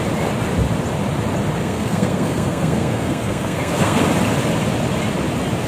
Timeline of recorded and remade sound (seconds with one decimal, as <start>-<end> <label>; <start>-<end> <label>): 0.0-1.6 recorded; 1.6-4.0 remade; 4.0-5.7 recorded